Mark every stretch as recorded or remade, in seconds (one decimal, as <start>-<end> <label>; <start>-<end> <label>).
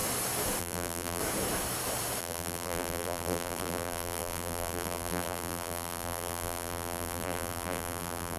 0.0-0.6 recorded; 0.6-1.2 remade; 1.2-2.2 recorded; 2.2-8.4 remade